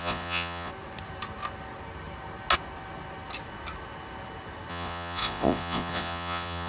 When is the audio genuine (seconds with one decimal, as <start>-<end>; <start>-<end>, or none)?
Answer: 0.7-4.7